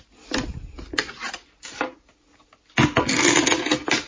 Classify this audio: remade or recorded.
recorded